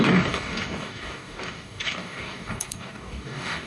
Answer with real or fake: fake